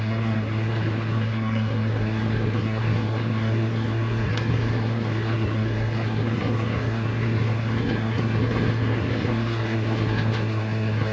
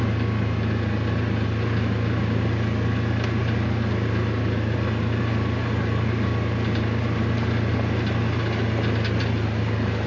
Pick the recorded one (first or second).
second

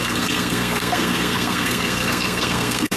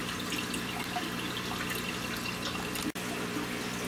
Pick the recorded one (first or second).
second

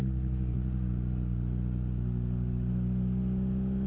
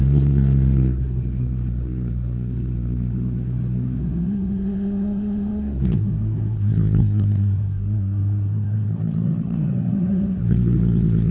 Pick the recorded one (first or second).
first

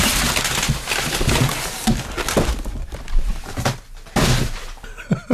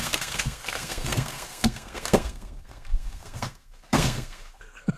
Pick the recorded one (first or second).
first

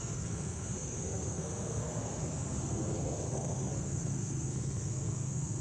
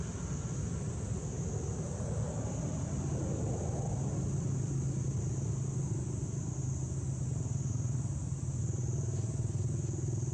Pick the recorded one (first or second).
second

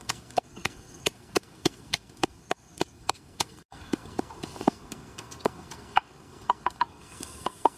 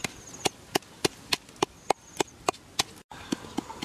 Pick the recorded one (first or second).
second